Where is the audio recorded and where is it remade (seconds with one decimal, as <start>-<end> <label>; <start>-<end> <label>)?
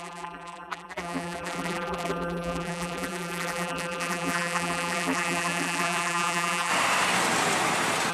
0.0-6.7 remade; 6.7-8.1 recorded